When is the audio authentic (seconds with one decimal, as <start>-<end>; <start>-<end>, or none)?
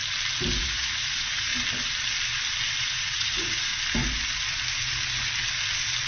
0.0-0.6; 1.5-2.8; 3.7-6.1